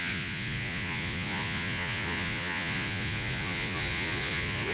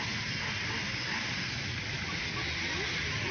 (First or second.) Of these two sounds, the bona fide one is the second